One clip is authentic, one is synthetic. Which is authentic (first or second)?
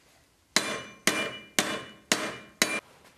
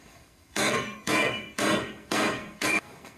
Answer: first